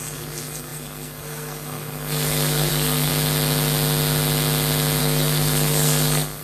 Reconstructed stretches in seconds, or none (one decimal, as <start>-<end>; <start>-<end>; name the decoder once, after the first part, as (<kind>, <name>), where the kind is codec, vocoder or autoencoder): 0.0-3.1 (codec, SNAC); 5.0-6.4